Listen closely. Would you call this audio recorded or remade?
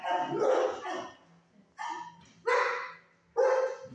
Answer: recorded